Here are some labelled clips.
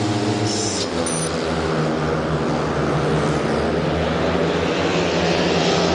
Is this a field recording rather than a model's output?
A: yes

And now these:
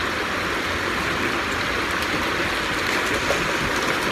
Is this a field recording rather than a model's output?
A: yes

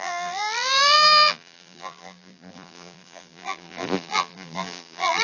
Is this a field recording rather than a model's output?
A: no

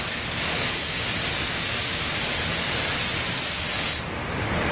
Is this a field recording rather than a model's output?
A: yes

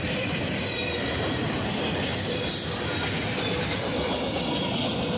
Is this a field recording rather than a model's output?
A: no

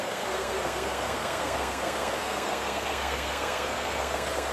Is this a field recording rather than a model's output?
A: no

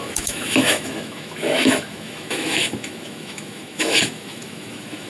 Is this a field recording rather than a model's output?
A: no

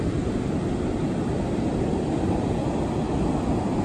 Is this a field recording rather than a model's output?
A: yes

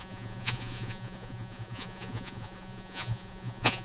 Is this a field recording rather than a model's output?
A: no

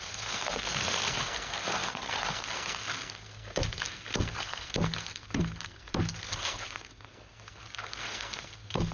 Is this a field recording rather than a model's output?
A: no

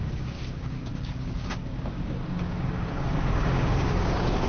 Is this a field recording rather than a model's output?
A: no